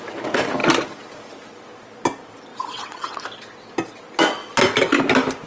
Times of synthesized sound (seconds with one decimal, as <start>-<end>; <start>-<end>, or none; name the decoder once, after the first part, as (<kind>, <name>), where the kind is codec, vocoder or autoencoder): 2.5-3.2 (vocoder, WaveNeXt)